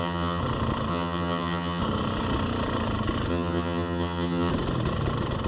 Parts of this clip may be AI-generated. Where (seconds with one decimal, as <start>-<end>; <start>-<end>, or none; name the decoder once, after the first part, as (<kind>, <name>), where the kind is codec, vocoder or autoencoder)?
0.0-0.4 (vocoder, HiFi-GAN); 0.9-1.8; 3.3-4.5